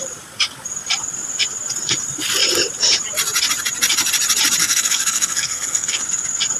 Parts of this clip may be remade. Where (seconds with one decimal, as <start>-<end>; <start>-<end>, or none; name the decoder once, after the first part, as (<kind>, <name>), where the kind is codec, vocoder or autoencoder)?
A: 4.6-6.0 (codec, SNAC)